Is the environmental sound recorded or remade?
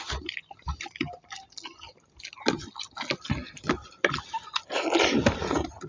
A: recorded